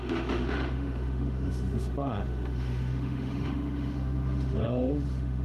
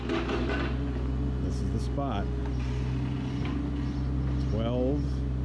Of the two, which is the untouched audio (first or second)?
second